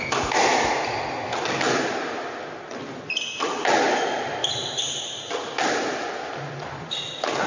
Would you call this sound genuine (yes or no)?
yes